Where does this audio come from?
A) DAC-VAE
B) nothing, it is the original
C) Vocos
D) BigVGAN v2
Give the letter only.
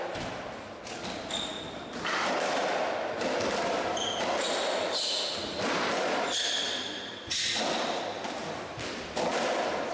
B